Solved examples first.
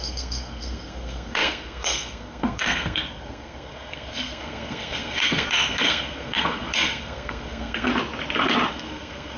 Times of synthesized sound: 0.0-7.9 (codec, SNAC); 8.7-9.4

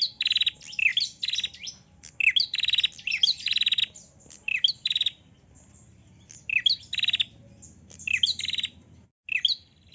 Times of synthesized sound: none

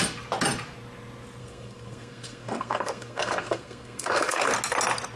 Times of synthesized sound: 1.4-4.5 (codec, SNAC)

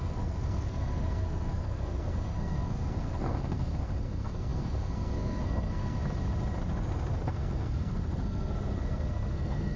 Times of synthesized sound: 0.0-6.0 (codec, SNAC); 6.8-9.8

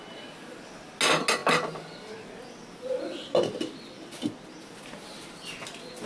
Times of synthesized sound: none

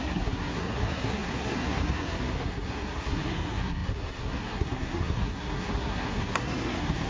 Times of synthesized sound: 0.0-7.1 (codec, SNAC)

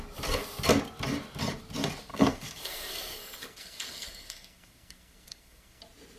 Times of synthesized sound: 2.1-5.8 (codec, SNAC)

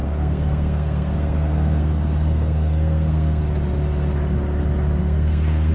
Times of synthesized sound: 0.0-3.4 (codec, SNAC); 5.0-5.7